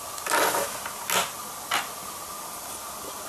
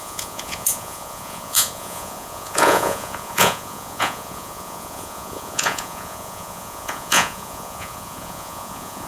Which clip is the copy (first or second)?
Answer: second